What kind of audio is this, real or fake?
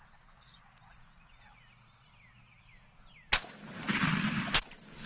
real